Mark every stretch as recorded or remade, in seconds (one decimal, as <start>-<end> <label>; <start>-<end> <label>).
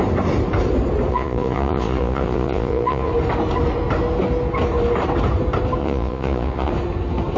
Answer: 0.0-1.1 recorded; 1.1-3.1 remade; 3.1-5.8 recorded; 5.8-6.7 remade; 6.7-7.4 recorded